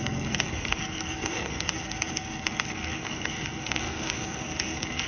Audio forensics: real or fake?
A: fake